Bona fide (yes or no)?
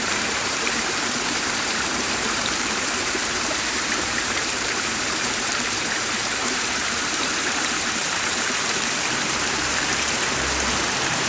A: no